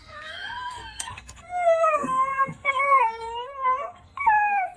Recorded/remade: remade